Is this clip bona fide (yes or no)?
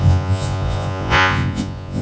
no